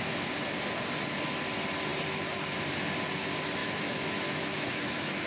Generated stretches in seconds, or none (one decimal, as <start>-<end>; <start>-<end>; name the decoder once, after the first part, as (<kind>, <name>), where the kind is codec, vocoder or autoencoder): 3.6-5.3 (autoencoder, DAC-VAE)